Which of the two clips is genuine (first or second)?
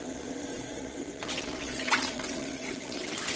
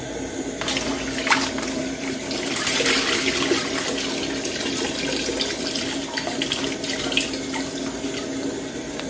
second